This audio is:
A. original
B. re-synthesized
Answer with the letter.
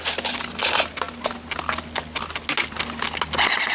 A